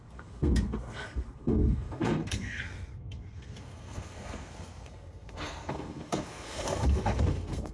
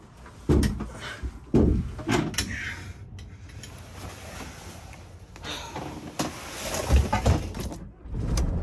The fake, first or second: first